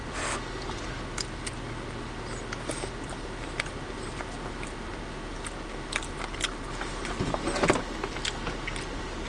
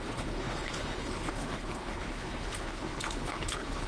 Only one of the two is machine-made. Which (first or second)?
second